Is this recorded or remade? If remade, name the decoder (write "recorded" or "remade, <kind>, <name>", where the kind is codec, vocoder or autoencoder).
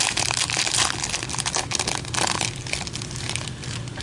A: recorded